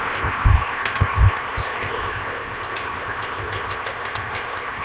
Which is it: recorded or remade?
remade